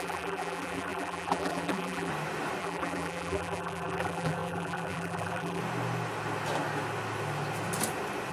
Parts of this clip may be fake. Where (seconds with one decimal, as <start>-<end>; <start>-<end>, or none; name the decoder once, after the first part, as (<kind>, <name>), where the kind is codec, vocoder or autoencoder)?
0.0-2.1 (vocoder, BigVGAN v2); 2.6-5.6